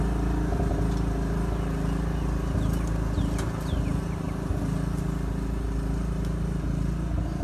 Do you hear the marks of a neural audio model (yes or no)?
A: no